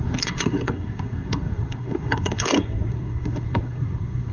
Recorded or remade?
remade